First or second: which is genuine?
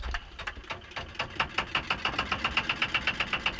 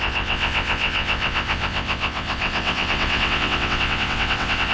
first